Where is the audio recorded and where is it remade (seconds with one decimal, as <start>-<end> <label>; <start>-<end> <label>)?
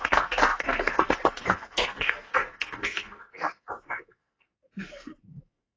0.0-5.8 remade